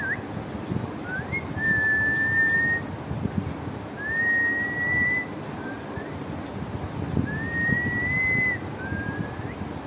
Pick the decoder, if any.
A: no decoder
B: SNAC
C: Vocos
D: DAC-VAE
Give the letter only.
A